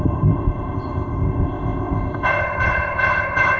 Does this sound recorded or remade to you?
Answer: remade